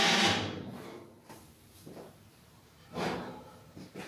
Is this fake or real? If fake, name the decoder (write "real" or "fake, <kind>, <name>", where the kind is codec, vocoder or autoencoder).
fake, vocoder, BigVGAN v2